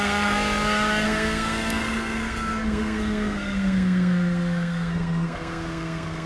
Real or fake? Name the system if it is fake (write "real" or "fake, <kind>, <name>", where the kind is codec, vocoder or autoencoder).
fake, codec, SNAC